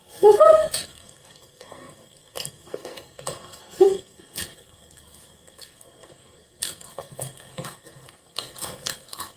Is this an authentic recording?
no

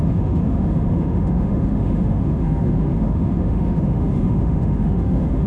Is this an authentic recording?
no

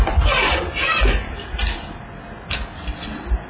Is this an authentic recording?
yes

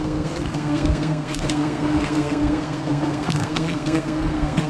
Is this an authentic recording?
no